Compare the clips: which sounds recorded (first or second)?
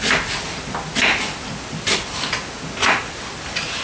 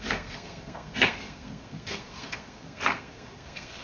first